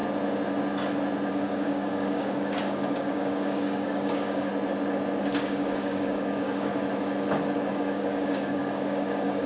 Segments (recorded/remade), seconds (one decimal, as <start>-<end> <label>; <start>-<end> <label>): 0.0-1.3 recorded; 1.3-4.5 remade; 4.5-5.2 recorded; 5.2-6.7 remade; 6.7-7.7 recorded; 7.7-9.5 remade